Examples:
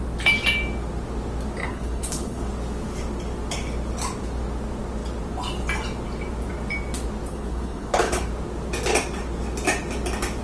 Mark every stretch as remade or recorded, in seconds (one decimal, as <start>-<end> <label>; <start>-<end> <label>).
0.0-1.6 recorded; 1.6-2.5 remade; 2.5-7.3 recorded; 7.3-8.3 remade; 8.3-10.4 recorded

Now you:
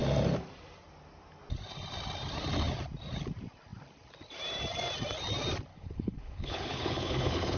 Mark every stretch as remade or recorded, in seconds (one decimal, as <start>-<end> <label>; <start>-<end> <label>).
0.0-5.7 recorded; 5.7-7.6 remade

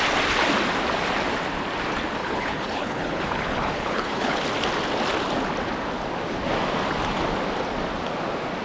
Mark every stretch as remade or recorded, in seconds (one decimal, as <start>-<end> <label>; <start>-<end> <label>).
0.0-2.2 recorded; 2.2-4.4 remade; 4.4-8.6 recorded

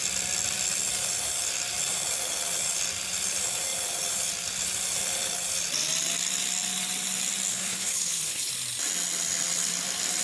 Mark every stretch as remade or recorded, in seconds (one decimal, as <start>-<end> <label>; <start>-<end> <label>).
0.0-7.5 recorded; 7.5-8.5 remade; 8.5-10.2 recorded

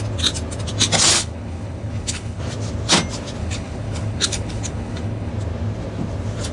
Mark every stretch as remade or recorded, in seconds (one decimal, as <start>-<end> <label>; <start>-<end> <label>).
0.0-1.1 recorded; 1.1-2.4 remade; 2.4-3.4 recorded; 3.4-5.3 remade; 5.3-6.5 recorded

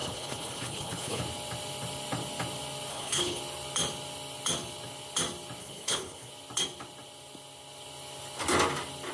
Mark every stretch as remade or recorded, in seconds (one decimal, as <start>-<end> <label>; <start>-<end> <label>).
0.0-1.2 remade; 1.2-2.9 recorded; 2.9-3.4 remade; 3.4-5.6 recorded; 5.6-6.3 remade; 6.3-9.1 recorded

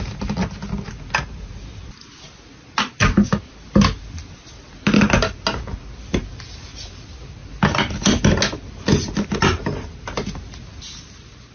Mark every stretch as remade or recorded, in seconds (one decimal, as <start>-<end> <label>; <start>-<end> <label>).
0.0-11.5 recorded